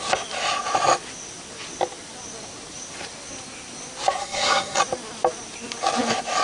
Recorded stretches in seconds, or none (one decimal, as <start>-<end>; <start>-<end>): 0.0-4.2; 4.8-6.4